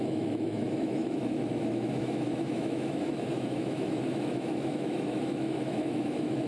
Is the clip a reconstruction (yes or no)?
yes